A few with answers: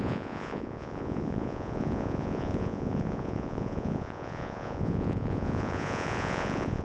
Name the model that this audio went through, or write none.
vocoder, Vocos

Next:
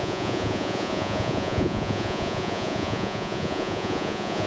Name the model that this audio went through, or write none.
vocoder, Vocos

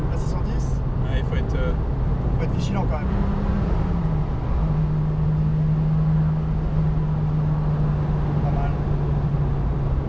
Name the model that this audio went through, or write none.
none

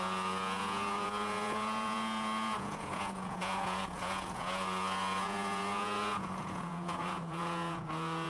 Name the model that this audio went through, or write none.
vocoder, Vocos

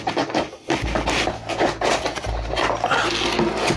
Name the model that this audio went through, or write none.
none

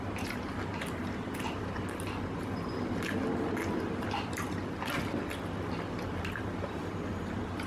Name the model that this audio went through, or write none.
none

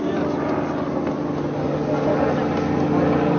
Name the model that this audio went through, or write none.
none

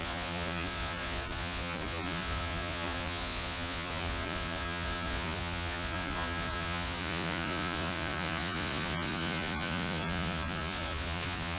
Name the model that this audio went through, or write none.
vocoder, Vocos